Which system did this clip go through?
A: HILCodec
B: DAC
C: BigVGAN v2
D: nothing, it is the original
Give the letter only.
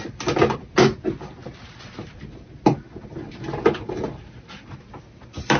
D